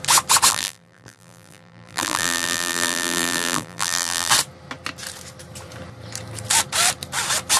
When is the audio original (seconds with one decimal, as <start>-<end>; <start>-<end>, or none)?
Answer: 0.0-0.5; 4.3-7.6